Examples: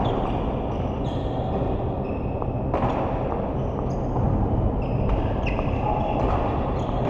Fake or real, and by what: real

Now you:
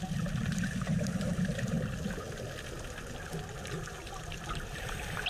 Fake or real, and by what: real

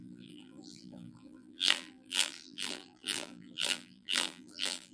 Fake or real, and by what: fake, vocoder, BigVGAN v2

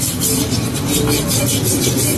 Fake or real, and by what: real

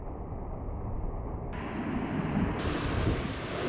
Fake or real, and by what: real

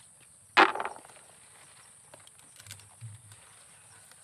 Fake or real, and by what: real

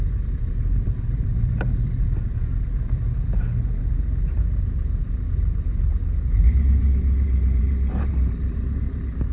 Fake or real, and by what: fake, vocoder, BigVGAN v2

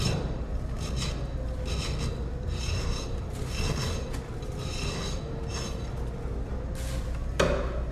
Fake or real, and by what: real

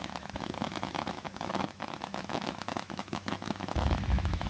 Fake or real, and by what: fake, autoencoder, DAC-VAE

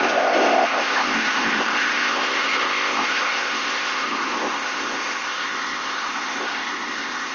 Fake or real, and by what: fake, codec, ZipCodec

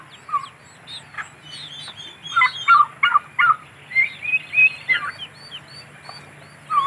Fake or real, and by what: real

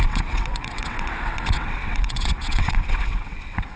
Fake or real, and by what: fake, vocoder, WaveNeXt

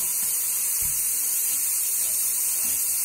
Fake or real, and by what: real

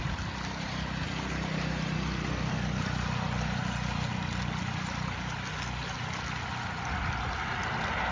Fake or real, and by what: real